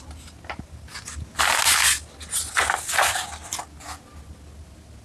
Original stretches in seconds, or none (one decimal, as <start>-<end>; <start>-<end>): 0.0-5.0